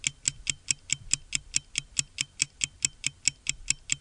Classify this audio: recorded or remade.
recorded